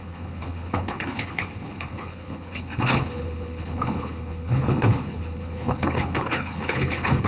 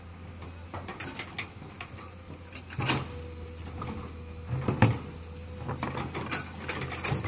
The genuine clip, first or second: second